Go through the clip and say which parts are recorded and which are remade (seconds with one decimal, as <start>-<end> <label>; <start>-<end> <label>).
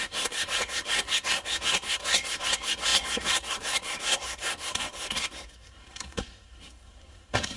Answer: 0.0-7.6 remade